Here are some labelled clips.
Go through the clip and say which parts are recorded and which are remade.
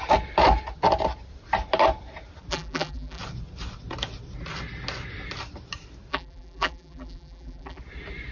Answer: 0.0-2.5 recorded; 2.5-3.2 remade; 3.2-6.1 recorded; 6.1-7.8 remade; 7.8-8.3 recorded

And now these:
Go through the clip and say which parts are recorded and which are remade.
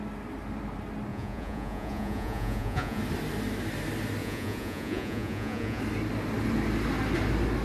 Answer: 0.0-1.1 recorded; 1.1-3.0 remade; 3.0-4.2 recorded; 4.2-5.8 remade; 5.8-7.6 recorded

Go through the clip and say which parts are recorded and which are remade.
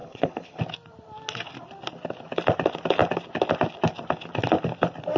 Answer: 0.0-0.6 remade; 0.6-5.2 recorded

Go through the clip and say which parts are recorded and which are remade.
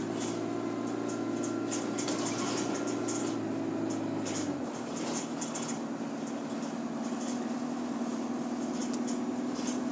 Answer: 0.0-9.9 recorded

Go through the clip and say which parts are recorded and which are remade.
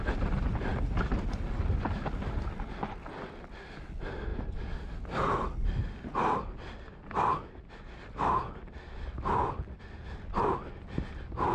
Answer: 0.0-11.5 recorded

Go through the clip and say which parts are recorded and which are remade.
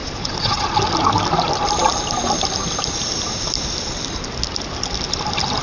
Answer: 0.0-0.7 remade; 0.7-5.6 recorded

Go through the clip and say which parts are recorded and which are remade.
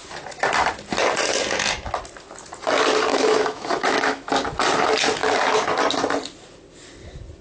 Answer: 0.0-3.1 recorded; 3.1-4.3 remade; 4.3-7.4 recorded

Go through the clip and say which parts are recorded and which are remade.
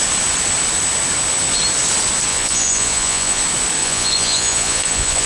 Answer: 0.0-2.3 recorded; 2.3-3.4 remade; 3.4-3.8 recorded; 3.8-5.3 remade